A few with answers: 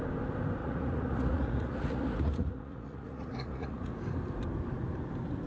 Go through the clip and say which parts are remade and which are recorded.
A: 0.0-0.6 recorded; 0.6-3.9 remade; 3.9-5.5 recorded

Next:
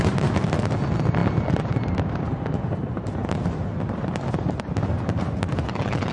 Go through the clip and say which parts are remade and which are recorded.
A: 0.0-6.1 recorded